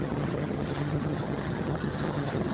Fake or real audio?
fake